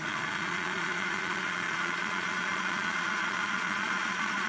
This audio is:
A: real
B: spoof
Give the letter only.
B